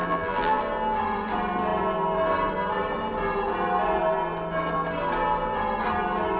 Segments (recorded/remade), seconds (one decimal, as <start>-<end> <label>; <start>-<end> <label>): 0.0-0.6 remade; 0.6-6.4 recorded